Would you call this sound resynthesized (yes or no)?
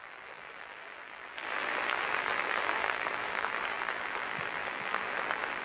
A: yes